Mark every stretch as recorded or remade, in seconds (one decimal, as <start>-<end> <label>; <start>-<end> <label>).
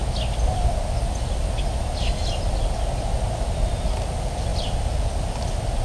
0.0-5.8 recorded